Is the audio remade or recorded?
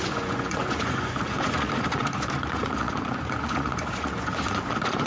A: remade